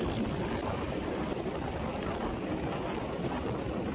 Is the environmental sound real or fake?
real